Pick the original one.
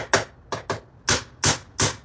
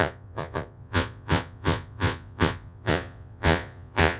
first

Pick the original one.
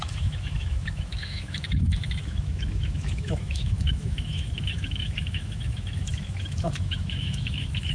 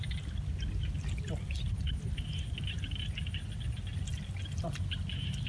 second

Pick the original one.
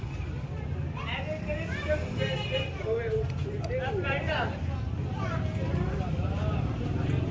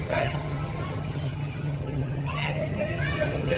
first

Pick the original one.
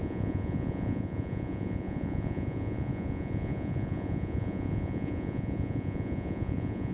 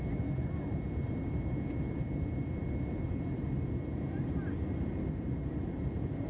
second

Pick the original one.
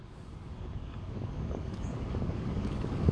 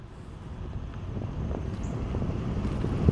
second